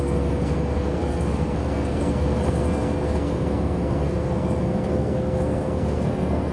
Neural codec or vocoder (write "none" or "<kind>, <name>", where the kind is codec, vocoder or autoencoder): codec, SNAC